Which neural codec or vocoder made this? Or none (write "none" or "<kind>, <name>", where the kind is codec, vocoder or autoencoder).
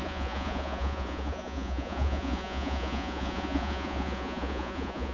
vocoder, Vocos